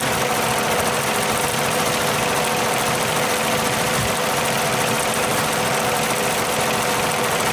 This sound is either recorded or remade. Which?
recorded